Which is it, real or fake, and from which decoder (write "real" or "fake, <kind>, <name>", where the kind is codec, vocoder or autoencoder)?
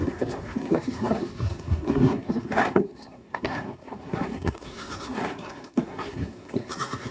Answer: fake, codec, SNAC